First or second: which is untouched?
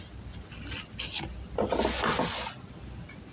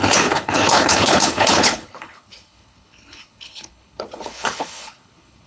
first